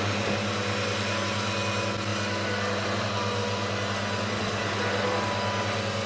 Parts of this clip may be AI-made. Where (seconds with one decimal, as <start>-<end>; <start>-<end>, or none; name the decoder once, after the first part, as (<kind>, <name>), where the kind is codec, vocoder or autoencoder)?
none